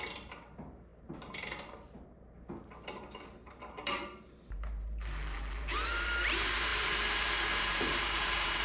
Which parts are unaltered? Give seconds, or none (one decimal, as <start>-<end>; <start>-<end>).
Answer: none